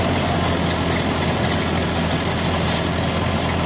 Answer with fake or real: real